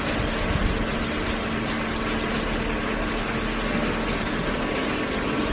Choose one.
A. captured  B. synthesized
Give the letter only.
A